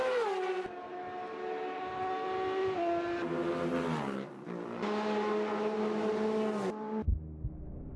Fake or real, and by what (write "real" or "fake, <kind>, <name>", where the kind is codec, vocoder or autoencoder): real